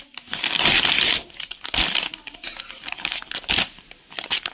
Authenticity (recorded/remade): recorded